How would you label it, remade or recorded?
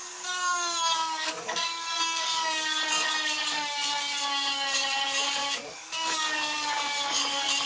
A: remade